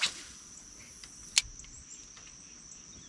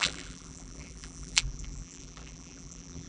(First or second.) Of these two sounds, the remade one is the second